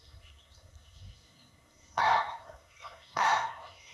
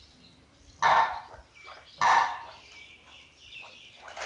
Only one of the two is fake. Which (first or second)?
first